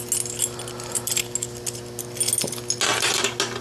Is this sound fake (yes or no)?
no